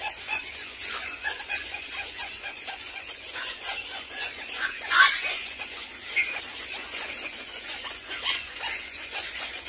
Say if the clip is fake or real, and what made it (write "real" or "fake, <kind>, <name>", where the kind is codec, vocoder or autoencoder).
fake, vocoder, Vocos